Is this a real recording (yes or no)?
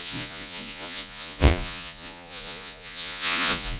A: no